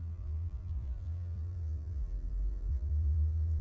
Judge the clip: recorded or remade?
remade